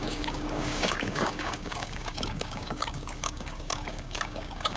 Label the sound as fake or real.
fake